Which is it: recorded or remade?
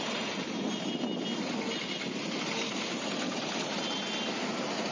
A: recorded